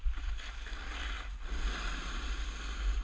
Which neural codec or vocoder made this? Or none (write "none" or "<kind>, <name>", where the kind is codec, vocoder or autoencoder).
none